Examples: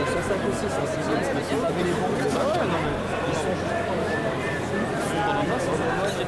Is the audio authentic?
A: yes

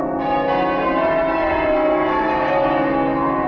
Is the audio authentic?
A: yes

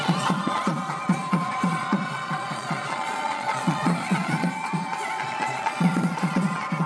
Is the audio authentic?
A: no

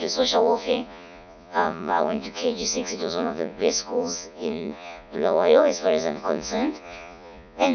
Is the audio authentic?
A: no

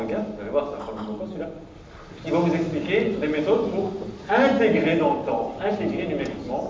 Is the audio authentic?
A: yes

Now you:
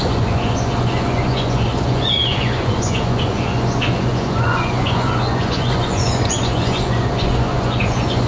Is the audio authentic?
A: no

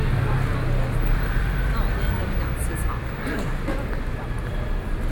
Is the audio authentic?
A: yes